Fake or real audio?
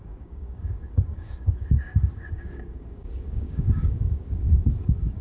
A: fake